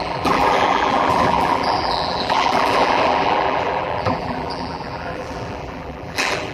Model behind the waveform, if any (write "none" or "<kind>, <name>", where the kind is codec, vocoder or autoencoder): vocoder, BigVGAN v2